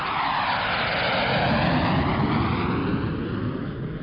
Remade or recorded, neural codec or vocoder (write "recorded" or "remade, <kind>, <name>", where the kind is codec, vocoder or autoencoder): recorded